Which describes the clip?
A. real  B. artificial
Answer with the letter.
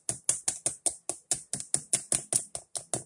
A